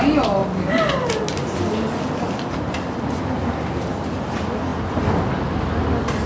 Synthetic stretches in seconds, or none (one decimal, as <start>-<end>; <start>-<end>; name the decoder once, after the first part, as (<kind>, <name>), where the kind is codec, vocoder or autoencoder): none